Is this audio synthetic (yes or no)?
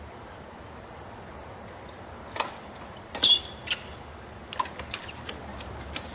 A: no